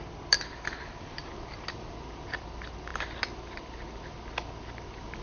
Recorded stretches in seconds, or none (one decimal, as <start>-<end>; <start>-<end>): 0.0-5.2